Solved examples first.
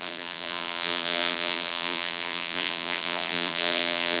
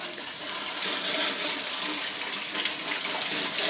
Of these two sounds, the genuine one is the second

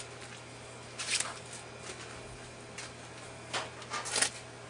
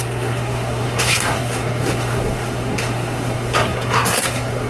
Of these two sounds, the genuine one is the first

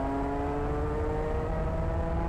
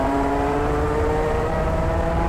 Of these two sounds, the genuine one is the first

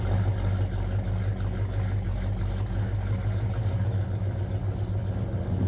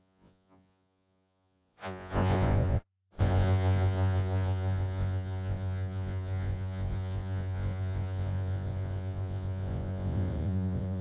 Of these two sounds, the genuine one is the first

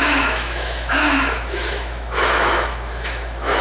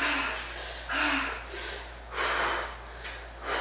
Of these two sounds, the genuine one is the second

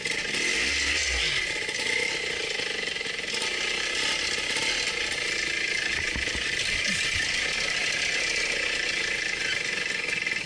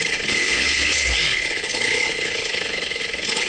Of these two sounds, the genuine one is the first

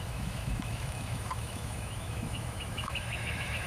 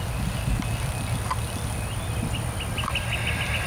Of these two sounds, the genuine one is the second